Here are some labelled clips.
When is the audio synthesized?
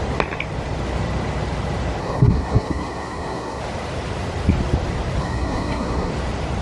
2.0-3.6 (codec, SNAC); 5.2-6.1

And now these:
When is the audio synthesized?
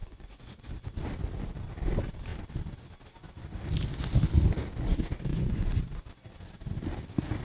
0.0-0.6 (vocoder, Vocos); 5.3-5.8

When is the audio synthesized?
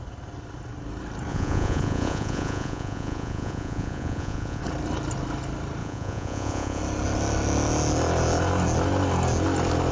1.3-4.6 (vocoder, Vocos); 5.8-6.8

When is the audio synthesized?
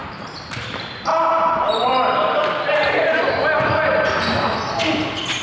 0.0-0.6 (vocoder, BigVGAN v2); 1.1-3.9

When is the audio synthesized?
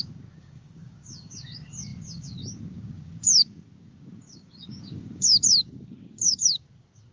0.0-7.1 (codec, DAC)